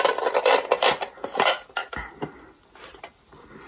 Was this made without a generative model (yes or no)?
yes